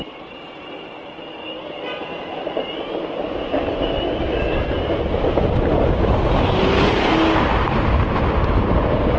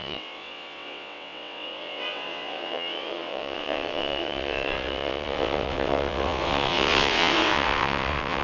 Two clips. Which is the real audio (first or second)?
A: first